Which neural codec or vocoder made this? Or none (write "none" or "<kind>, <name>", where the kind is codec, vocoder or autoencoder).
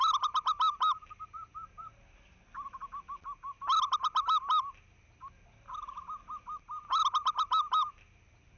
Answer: none